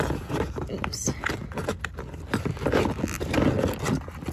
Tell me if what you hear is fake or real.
real